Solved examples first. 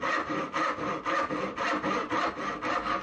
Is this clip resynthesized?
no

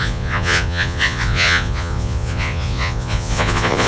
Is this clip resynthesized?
yes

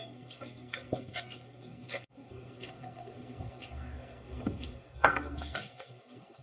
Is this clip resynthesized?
yes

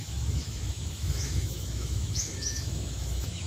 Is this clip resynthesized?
yes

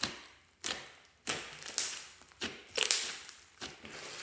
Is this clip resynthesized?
no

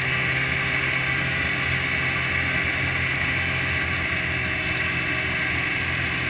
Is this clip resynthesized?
no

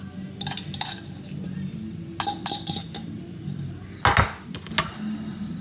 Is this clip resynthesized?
no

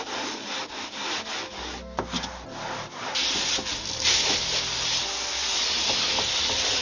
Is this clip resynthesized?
no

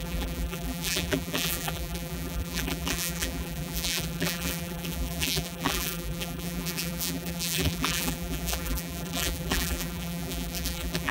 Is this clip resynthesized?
yes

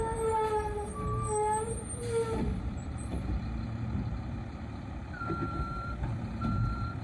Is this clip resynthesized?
yes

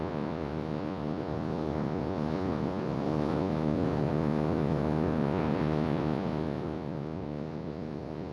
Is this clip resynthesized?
yes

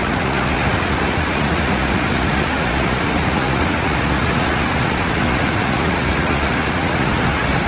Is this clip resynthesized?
yes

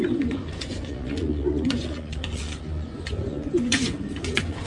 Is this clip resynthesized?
yes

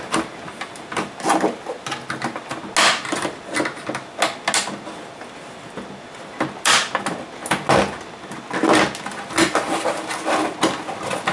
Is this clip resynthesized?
no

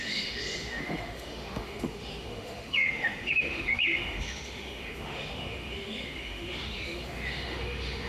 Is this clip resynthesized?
yes